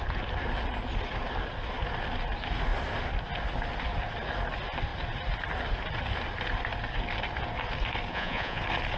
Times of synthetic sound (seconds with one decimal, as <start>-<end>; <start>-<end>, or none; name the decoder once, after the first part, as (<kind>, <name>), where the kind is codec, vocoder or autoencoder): 8.1-8.6 (vocoder, Vocos)